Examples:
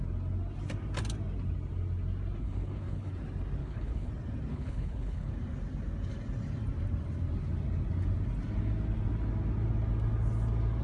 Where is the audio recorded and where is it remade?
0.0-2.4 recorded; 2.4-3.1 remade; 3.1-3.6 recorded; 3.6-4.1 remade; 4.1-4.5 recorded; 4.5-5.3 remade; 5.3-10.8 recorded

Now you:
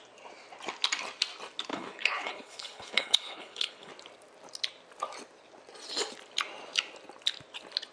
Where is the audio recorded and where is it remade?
0.0-1.7 recorded; 1.7-3.9 remade; 3.9-7.9 recorded

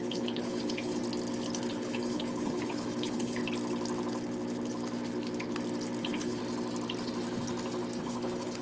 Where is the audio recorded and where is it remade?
0.0-1.0 remade; 1.0-1.7 recorded; 1.7-3.4 remade; 3.4-6.0 recorded; 6.0-6.4 remade; 6.4-8.0 recorded; 8.0-8.6 remade

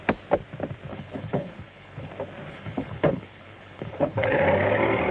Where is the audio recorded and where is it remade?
0.0-0.9 recorded; 0.9-2.1 remade; 2.1-2.5 recorded; 2.5-4.4 remade; 4.4-5.1 recorded